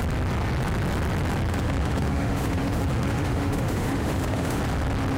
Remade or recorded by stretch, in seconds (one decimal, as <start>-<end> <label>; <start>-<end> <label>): 0.0-1.5 recorded; 1.5-4.6 remade; 4.6-5.2 recorded